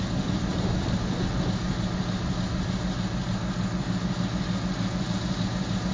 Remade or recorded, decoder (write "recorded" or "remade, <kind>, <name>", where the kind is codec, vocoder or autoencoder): recorded